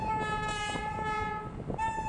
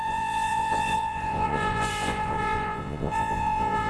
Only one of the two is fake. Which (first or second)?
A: second